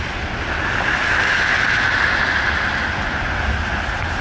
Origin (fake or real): real